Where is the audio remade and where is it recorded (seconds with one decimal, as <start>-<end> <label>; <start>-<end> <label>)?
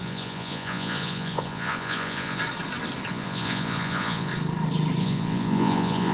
0.0-2.4 remade; 2.4-3.1 recorded; 3.1-4.3 remade; 4.3-5.0 recorded; 5.0-6.1 remade